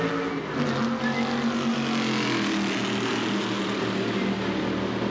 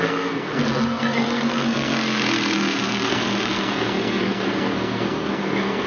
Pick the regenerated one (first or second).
second